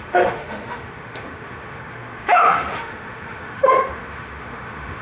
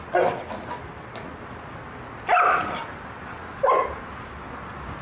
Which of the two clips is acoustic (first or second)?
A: second